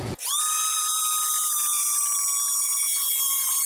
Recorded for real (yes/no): no